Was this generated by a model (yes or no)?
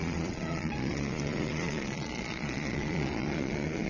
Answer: yes